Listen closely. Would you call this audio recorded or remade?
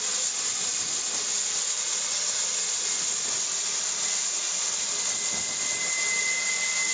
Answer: recorded